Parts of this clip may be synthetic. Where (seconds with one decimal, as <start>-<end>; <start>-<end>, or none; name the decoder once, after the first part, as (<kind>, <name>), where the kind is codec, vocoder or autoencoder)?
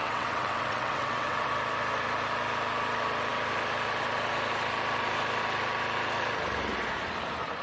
0.0-1.5 (vocoder, WaveNeXt)